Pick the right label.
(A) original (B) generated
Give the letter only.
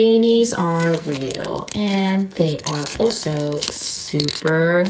B